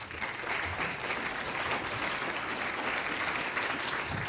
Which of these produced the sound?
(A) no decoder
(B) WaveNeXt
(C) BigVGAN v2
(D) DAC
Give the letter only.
A